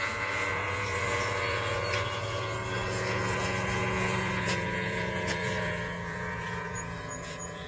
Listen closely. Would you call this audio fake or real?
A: fake